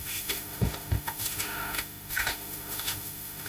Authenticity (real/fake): fake